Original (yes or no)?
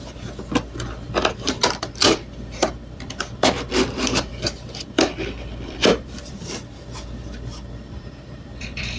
no